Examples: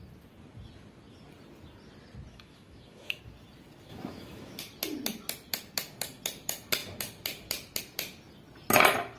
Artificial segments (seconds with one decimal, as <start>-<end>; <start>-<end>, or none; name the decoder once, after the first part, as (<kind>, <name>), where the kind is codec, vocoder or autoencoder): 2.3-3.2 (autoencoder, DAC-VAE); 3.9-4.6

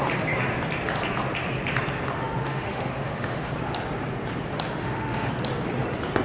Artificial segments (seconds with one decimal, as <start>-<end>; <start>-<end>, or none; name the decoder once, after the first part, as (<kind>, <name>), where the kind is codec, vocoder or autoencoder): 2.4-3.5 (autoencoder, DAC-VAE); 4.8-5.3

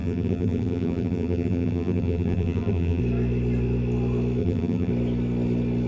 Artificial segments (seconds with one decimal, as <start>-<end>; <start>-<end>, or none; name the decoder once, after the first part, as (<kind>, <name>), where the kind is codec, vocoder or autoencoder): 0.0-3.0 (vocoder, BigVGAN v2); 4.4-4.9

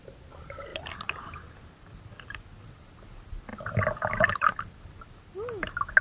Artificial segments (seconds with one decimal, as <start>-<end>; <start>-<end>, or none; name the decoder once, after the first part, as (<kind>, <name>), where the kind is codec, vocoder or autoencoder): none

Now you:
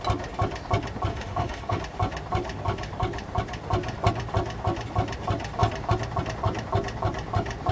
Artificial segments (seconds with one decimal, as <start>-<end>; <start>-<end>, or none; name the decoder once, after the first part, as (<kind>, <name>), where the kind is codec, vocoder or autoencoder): 1.1-1.8 (autoencoder, DAC-VAE)